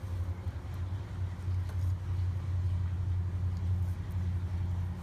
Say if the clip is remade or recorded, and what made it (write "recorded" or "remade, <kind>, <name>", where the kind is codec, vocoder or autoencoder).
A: recorded